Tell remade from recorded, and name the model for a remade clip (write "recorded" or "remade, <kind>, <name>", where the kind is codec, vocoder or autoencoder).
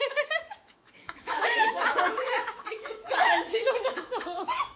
remade, autoencoder, DAC-VAE